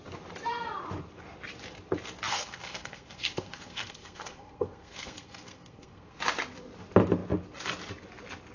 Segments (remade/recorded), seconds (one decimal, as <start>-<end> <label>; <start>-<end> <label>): 0.0-2.3 recorded; 2.3-6.2 remade; 6.2-8.5 recorded